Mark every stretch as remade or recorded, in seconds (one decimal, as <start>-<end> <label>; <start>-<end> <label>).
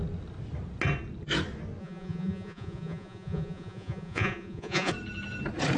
0.0-1.8 recorded; 1.8-4.9 remade; 4.9-5.8 recorded